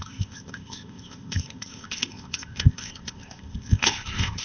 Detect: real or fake fake